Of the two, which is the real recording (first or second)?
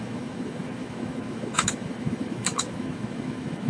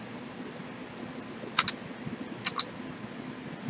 second